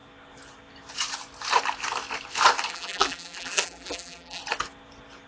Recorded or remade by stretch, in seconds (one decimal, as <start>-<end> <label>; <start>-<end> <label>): 0.0-2.7 recorded; 2.7-4.4 remade; 4.4-5.3 recorded